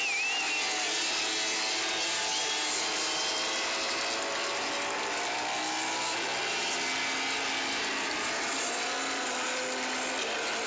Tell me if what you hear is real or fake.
real